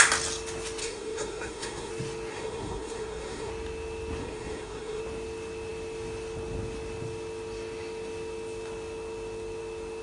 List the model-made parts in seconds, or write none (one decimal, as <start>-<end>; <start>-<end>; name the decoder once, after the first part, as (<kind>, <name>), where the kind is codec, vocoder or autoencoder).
0.8-1.9 (codec, SNAC); 2.3-3.5; 4.2-5.0